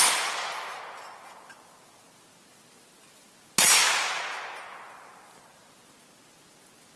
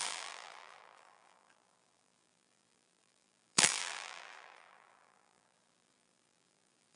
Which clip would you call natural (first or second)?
first